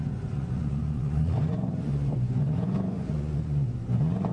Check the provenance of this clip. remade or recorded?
remade